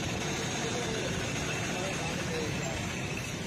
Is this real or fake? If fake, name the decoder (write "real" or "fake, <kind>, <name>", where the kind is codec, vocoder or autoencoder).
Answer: real